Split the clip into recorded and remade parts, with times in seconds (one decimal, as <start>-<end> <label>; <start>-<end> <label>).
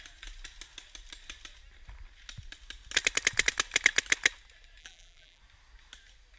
0.0-4.8 recorded; 4.8-5.4 remade; 5.4-6.4 recorded